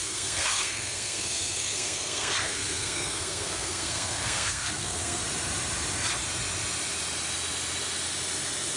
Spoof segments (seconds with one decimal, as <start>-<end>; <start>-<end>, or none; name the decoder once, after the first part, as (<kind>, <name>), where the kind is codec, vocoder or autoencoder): 0.0-5.2 (codec, SNAC)